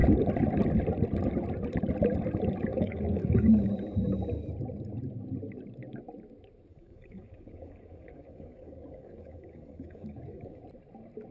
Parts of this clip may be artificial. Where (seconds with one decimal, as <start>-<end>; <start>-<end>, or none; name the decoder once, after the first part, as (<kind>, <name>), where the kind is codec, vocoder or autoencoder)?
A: 2.7-3.7 (codec, DAC); 6.7-10.6